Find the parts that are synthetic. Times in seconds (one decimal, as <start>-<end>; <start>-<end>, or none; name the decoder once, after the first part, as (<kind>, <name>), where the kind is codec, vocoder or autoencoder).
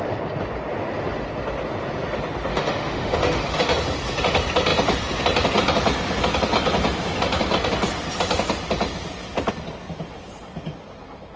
2.5-3.6 (autoencoder, DAC-VAE)